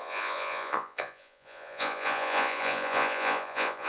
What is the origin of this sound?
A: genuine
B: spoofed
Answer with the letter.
B